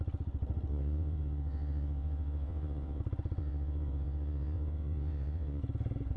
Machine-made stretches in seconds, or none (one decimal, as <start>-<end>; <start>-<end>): 0.7-3.0; 3.4-5.6